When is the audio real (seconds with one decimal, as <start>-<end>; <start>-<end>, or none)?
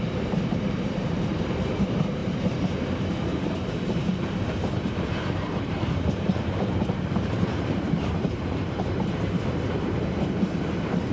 none